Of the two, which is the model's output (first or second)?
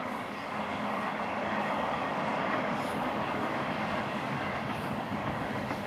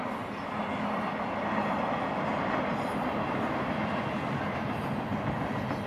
first